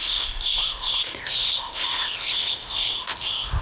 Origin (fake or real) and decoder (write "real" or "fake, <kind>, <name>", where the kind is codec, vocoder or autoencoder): fake, codec, ZipCodec